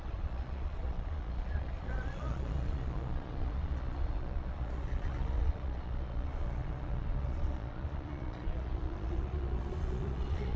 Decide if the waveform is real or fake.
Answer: fake